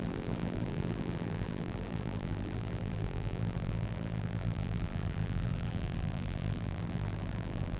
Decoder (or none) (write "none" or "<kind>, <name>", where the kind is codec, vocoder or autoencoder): vocoder, BigVGAN v2